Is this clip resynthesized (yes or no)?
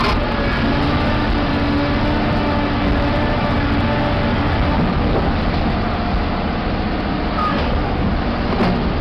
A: no